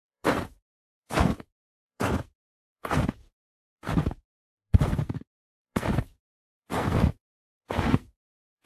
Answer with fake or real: fake